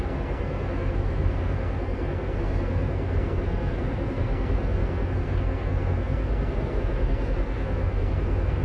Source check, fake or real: fake